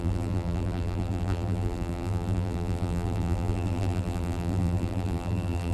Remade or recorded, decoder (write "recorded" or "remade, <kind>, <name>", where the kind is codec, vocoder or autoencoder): remade, vocoder, BigVGAN v2